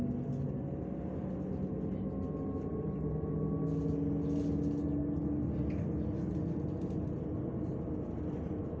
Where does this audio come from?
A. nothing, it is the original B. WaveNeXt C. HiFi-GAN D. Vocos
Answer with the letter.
A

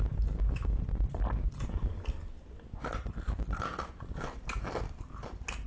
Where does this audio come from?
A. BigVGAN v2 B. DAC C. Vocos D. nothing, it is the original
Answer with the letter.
D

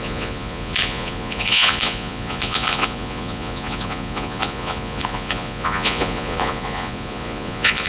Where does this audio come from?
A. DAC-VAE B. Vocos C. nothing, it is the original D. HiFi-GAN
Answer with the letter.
B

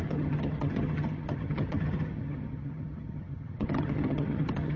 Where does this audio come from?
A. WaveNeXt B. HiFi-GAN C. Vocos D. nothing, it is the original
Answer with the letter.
B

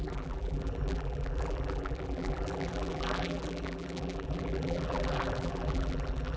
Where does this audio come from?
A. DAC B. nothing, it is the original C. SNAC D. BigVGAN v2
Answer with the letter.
D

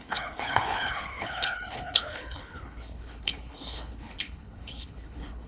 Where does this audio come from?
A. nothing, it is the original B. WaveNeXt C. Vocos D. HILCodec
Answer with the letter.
D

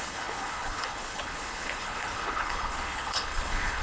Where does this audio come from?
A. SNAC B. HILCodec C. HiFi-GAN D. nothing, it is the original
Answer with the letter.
B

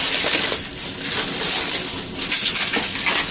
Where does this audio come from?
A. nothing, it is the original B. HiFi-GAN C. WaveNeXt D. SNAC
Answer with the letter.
A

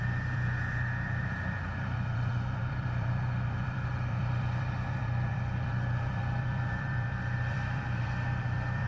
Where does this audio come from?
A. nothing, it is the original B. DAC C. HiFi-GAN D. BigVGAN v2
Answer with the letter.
D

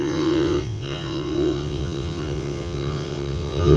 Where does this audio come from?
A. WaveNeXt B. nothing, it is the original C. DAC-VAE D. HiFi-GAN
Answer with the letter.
A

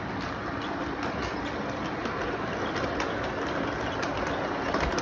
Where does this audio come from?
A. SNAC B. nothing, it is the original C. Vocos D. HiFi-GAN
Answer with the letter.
B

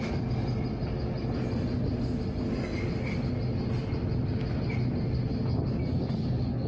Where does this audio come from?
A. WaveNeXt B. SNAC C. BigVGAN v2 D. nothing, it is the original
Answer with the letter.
D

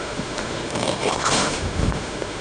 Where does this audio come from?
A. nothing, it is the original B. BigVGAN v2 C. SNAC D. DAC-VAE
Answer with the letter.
D